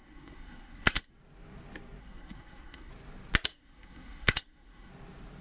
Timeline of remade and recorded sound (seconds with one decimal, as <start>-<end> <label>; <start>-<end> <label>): 0.0-1.1 remade; 1.1-2.0 recorded; 2.0-2.9 remade; 2.9-3.5 recorded; 3.5-4.9 remade; 4.9-5.4 recorded